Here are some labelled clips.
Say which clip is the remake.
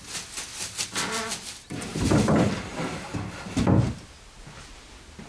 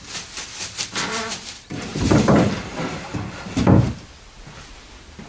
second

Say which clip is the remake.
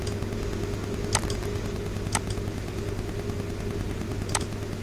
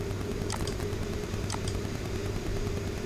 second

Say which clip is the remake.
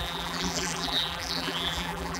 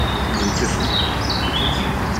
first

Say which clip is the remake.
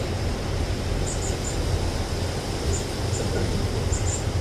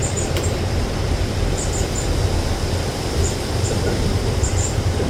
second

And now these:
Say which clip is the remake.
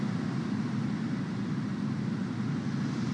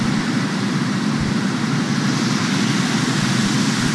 second